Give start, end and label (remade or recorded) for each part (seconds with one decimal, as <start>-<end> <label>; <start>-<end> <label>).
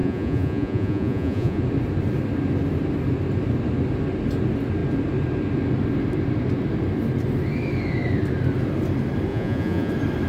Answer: 0.0-1.6 remade; 1.6-9.3 recorded; 9.3-9.9 remade; 9.9-10.3 recorded